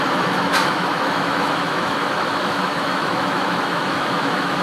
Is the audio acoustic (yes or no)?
no